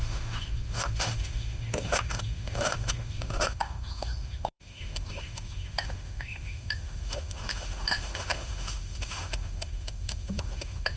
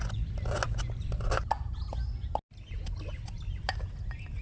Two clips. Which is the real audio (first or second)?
second